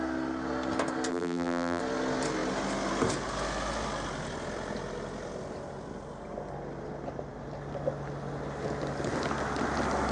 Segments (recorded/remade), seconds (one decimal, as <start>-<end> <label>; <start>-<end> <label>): 0.0-1.1 recorded; 1.1-1.8 remade; 1.8-10.1 recorded